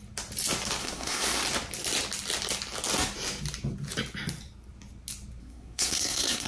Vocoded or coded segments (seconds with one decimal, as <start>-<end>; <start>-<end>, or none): 0.8-1.4; 5.4-6.5